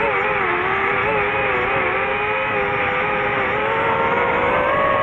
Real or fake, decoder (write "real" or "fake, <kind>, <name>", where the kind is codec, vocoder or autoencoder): real